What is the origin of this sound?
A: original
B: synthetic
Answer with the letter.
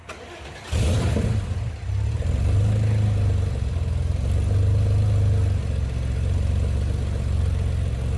A